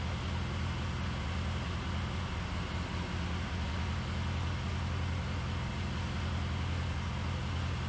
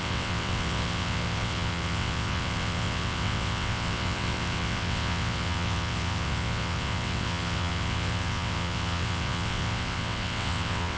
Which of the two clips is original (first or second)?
first